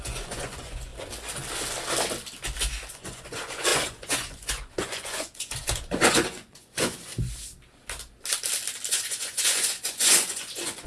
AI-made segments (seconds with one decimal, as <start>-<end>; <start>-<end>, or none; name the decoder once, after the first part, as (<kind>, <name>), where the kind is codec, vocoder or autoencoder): 0.0-0.9 (vocoder, Vocos); 2.9-7.1; 8.9-10.9